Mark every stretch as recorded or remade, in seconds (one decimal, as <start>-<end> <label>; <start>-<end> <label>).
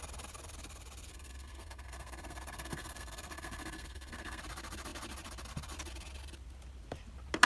0.0-1.1 recorded; 1.1-4.4 remade; 4.4-7.5 recorded